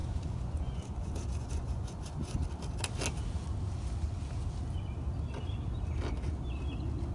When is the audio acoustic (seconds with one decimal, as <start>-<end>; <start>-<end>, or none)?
2.4-7.1

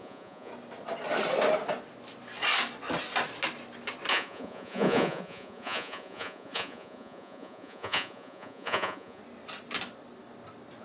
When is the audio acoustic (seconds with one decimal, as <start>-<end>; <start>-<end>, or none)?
0.5-4.1; 9.2-10.8

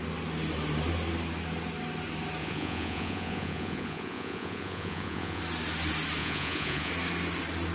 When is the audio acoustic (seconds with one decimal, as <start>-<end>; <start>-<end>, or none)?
0.0-2.4; 5.4-6.2; 6.9-7.7

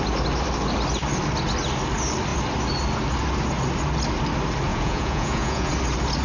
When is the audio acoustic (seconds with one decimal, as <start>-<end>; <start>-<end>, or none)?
0.0-4.7; 5.7-6.2

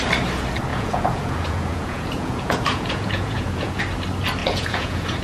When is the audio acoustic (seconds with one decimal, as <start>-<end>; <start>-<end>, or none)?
0.0-0.7; 3.8-4.4

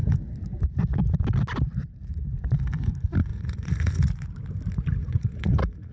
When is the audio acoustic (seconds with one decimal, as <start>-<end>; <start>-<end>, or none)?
0.0-3.3; 4.3-5.0

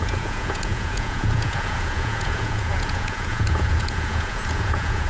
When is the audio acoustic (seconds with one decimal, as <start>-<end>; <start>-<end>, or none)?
none

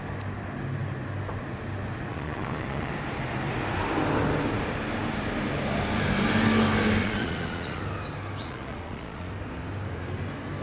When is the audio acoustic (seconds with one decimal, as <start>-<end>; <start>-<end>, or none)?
0.0-2.1; 2.9-7.0; 7.8-8.4; 9.3-10.6